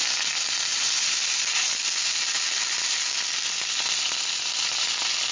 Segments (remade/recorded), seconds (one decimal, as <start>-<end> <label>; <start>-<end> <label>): 0.0-5.3 recorded